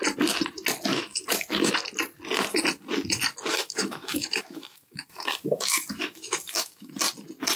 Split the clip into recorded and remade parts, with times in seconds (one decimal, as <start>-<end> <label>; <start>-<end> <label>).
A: 0.0-0.9 recorded; 0.9-1.7 remade; 1.7-3.5 recorded; 3.5-6.9 remade; 6.9-7.6 recorded